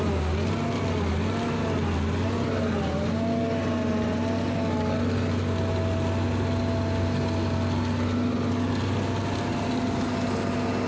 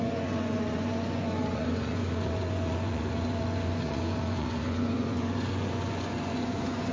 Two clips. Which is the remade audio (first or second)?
second